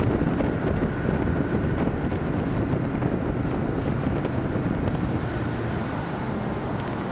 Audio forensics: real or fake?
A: real